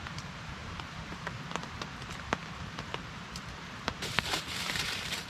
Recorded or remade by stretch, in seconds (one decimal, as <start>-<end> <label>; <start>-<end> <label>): 0.0-5.3 remade